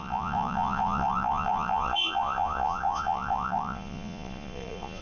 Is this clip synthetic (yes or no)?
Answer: yes